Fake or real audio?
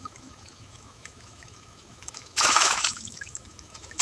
fake